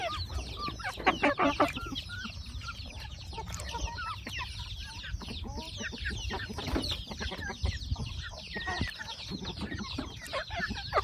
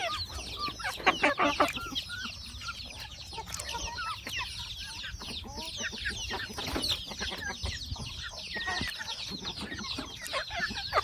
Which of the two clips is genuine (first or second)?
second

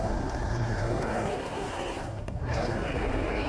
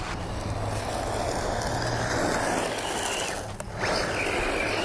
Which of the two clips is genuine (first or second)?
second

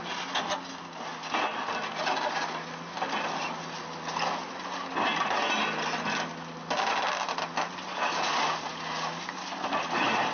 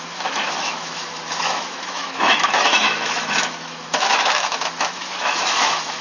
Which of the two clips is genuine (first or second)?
first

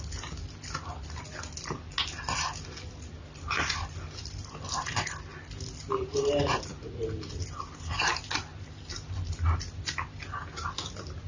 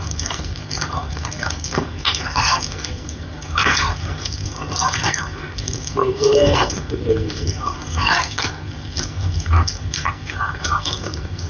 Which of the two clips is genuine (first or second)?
first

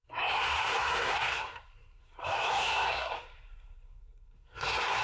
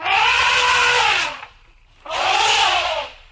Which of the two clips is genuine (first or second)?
second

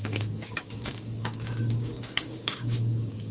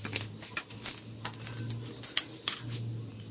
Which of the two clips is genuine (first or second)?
second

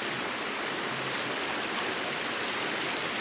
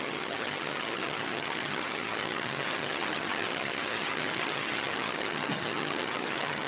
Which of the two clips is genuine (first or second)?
first